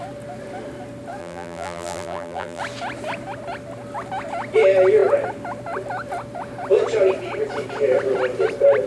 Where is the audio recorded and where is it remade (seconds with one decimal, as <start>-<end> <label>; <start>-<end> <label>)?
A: 0.0-1.2 recorded; 1.2-2.6 remade; 2.6-8.9 recorded